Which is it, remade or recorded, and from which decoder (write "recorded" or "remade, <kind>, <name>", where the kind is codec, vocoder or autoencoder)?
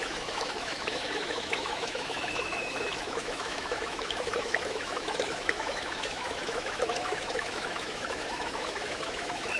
remade, autoencoder, DAC-VAE